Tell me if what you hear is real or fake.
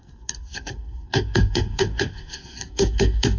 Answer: fake